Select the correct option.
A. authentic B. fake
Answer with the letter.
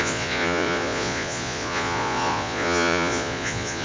B